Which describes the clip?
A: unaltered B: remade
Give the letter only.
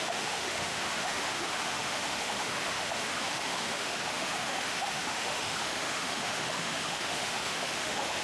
B